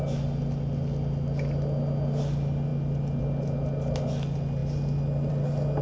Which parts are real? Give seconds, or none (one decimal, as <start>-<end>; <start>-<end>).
0.0-5.8